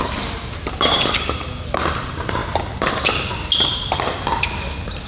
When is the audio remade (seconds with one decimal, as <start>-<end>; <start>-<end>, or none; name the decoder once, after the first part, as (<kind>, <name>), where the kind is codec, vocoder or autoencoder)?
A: 0.0-2.4 (vocoder, BigVGAN v2)